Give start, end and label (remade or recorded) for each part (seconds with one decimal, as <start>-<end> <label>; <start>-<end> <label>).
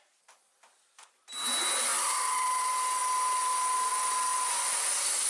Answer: 0.0-1.9 recorded; 1.9-2.6 remade; 2.6-5.3 recorded